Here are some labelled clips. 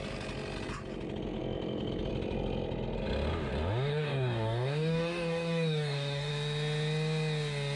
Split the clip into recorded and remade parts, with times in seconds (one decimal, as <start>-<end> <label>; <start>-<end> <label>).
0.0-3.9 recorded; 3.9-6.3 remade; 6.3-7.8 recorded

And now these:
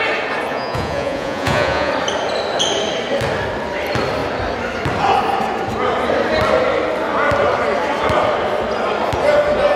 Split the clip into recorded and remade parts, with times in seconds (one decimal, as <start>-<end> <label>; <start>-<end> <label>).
0.0-0.5 recorded; 0.5-1.9 remade; 1.9-9.8 recorded

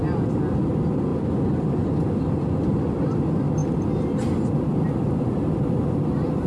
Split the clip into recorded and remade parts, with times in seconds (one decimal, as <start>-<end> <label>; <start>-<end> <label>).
0.0-6.5 recorded

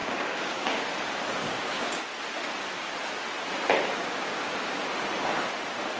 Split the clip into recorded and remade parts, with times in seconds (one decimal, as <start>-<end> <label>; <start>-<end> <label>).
0.0-0.8 remade; 0.8-1.4 recorded; 1.4-2.0 remade; 2.0-4.0 recorded; 4.0-4.8 remade; 4.8-6.0 recorded

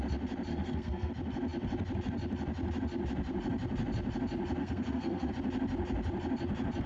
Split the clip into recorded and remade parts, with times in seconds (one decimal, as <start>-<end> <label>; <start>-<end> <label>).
0.0-0.5 recorded; 0.5-1.1 remade; 1.1-4.6 recorded; 4.6-5.3 remade; 5.3-6.9 recorded

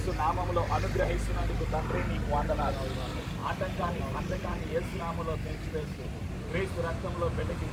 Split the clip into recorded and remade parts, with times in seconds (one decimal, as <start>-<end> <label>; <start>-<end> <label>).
0.0-3.4 recorded; 3.4-6.7 remade; 6.7-7.7 recorded

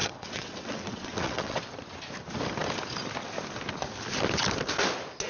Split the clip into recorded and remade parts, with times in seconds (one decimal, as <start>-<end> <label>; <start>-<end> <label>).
0.0-1.6 remade; 1.6-5.3 recorded

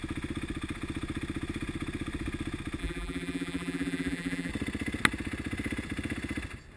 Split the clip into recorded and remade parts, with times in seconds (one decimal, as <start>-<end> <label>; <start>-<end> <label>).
0.0-2.8 recorded; 2.8-4.5 remade; 4.5-6.8 recorded